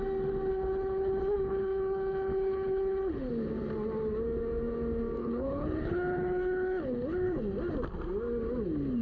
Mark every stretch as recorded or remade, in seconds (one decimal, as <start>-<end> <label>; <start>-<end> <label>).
0.0-0.5 recorded; 0.5-3.3 remade; 3.3-5.2 recorded; 5.2-7.4 remade; 7.4-9.0 recorded